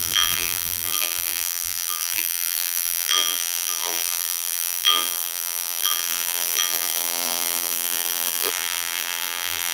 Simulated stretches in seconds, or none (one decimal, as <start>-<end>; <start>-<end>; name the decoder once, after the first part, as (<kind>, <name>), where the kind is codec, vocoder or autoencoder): 0.0-9.7 (vocoder, BigVGAN v2)